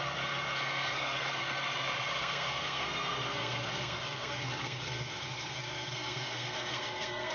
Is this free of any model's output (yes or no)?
no